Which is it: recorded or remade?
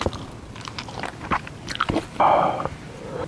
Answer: recorded